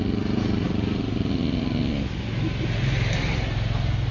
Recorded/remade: recorded